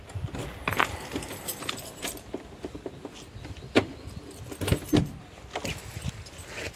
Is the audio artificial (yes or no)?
no